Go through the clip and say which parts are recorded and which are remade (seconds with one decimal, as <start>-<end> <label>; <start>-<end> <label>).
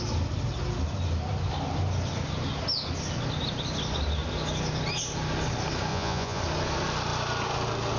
0.0-5.9 recorded; 5.9-6.4 remade; 6.4-8.0 recorded